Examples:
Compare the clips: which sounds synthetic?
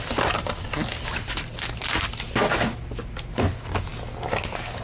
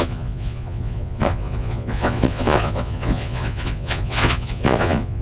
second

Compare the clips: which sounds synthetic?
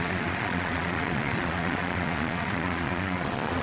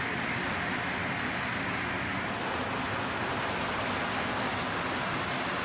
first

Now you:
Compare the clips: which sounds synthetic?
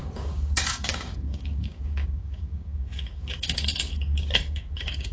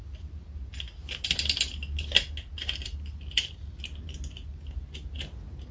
first